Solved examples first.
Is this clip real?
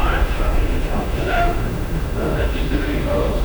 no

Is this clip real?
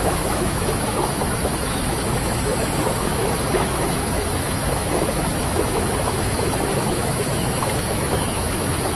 no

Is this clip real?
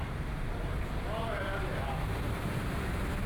yes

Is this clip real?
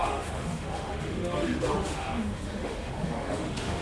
no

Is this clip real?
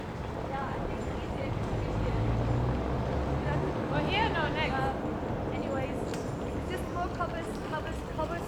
yes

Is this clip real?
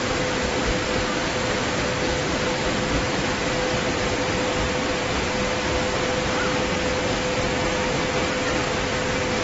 yes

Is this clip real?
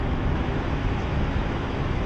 no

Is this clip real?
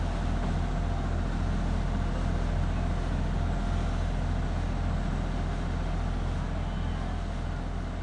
yes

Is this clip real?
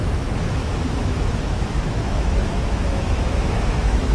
no